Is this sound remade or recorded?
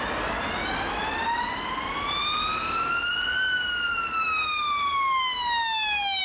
recorded